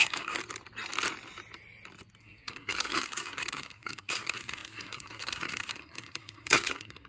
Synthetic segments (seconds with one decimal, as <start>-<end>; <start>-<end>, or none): 0.0-0.4; 2.2-7.1